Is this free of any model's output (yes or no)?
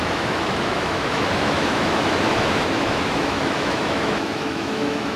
no